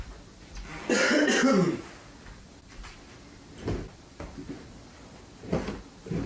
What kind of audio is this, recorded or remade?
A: recorded